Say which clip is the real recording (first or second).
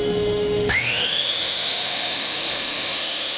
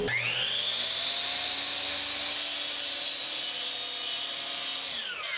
second